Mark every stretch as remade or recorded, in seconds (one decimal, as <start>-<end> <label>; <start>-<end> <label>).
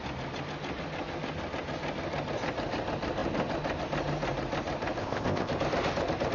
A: 0.0-5.0 recorded; 5.0-5.5 remade; 5.5-6.3 recorded